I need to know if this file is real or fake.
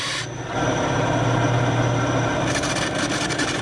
fake